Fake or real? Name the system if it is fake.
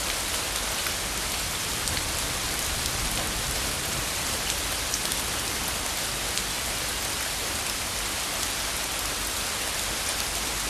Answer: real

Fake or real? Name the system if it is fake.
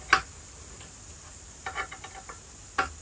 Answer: real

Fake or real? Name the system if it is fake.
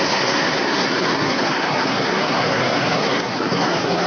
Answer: fake, codec, SNAC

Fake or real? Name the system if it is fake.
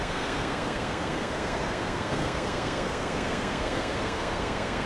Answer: fake, codec, SNAC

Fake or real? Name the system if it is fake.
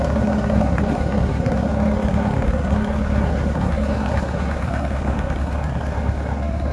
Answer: fake, codec, SNAC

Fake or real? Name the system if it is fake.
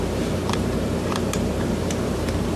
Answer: fake, vocoder, BigVGAN v2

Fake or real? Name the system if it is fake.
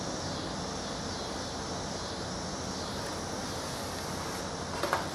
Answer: real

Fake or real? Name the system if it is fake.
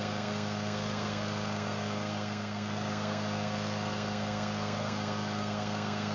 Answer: fake, codec, SNAC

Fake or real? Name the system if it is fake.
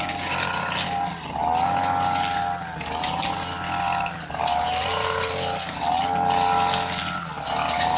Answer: real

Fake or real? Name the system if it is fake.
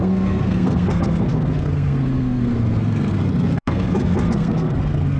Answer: fake, codec, SNAC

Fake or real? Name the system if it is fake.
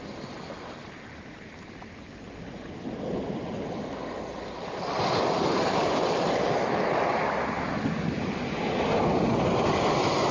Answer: real